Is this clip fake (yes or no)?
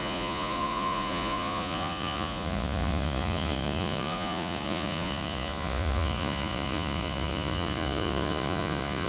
yes